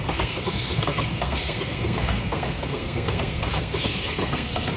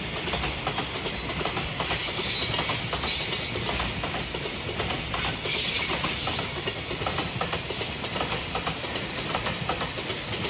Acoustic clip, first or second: second